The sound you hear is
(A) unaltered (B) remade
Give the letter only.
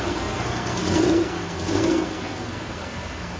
B